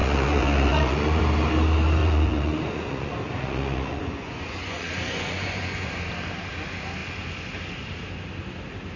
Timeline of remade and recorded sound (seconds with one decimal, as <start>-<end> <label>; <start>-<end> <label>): 0.0-1.2 remade; 1.2-2.0 recorded; 2.0-5.9 remade; 5.9-9.0 recorded